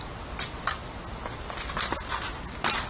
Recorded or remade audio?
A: recorded